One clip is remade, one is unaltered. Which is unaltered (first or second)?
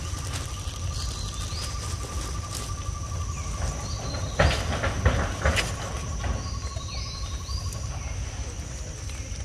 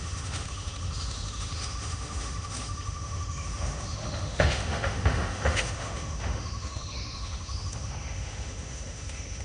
first